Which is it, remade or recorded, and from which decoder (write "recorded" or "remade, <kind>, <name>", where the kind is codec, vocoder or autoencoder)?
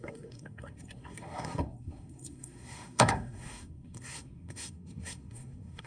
remade, codec, SNAC